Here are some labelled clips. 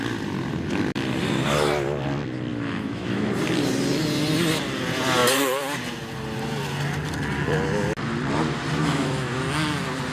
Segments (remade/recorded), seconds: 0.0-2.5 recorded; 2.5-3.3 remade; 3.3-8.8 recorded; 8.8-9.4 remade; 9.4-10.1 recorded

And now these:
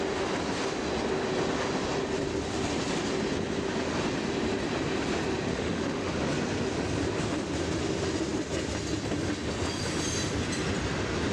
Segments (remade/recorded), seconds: 0.0-5.5 recorded; 5.5-6.1 remade; 6.1-11.3 recorded